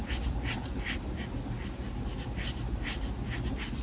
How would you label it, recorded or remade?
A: recorded